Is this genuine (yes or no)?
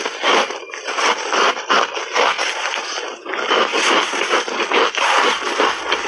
yes